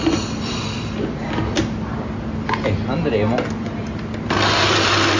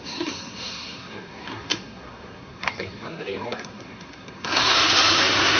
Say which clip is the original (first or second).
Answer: first